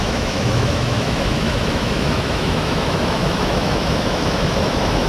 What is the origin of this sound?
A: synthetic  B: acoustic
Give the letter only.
A